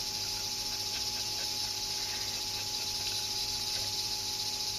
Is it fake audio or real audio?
real